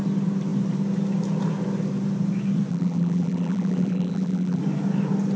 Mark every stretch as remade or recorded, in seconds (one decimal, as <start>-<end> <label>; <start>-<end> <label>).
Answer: 0.0-2.7 recorded; 2.7-4.6 remade; 4.6-5.4 recorded